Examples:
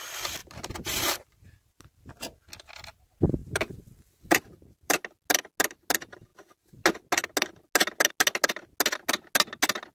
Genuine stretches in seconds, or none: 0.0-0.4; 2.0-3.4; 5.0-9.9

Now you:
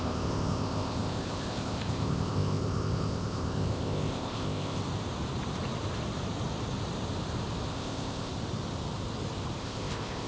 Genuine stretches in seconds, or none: 4.8-7.7; 8.3-9.6